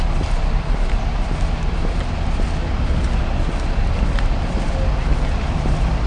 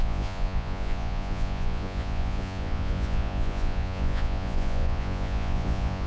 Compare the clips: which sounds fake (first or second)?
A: second